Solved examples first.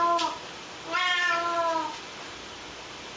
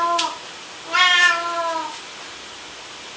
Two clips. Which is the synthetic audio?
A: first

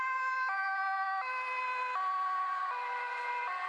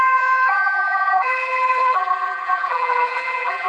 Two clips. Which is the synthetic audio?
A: second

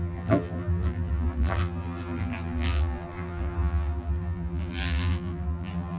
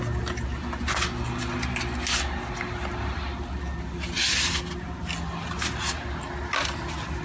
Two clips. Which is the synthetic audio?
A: first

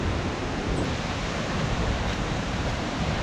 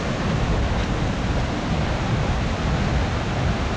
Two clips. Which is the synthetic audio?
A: first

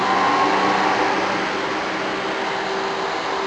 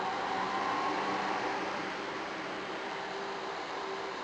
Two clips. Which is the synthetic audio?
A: second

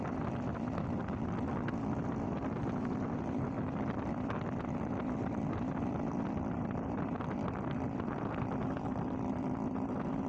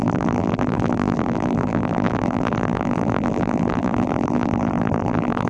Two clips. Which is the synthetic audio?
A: second